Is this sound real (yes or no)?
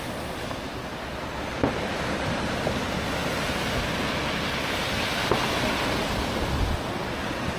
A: yes